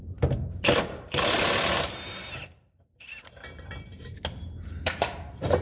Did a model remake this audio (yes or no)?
yes